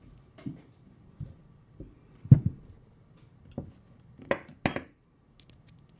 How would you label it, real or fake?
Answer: real